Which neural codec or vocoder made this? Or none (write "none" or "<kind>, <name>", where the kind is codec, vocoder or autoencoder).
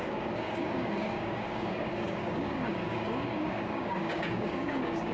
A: codec, DAC